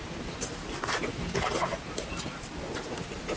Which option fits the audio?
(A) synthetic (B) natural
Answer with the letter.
B